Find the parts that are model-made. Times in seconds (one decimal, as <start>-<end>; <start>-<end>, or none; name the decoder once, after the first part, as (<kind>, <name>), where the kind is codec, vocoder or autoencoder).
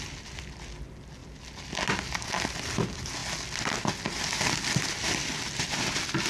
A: none